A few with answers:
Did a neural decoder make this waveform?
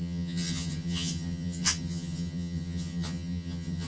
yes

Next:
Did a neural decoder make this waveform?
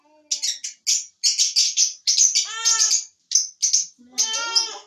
no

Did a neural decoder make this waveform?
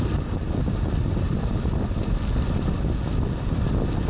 yes